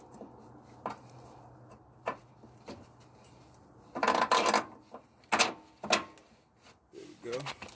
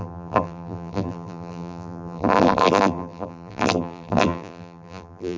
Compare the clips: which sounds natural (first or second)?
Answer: first